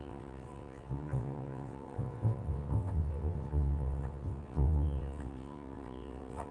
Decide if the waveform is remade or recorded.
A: remade